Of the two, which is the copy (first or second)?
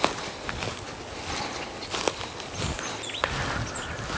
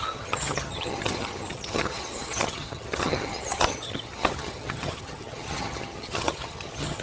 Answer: second